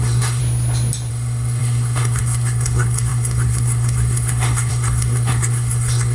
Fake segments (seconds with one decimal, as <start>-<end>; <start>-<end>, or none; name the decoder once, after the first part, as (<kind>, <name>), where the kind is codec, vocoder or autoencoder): 0.0-0.4 (codec, SNAC); 1.1-6.1